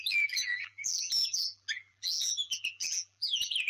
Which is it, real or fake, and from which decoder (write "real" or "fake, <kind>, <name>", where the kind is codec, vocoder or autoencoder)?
fake, vocoder, BigVGAN v2